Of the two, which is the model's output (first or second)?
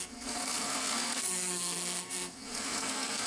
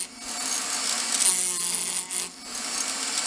first